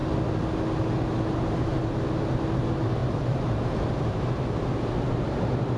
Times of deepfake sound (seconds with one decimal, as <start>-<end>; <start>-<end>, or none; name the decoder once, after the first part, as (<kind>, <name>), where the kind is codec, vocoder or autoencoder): 3.0-4.2 (vocoder, BigVGAN v2)